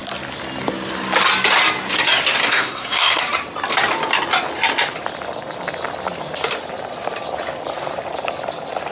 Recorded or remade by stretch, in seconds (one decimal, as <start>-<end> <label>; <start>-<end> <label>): 0.0-2.4 recorded; 2.4-3.2 remade; 3.2-8.9 recorded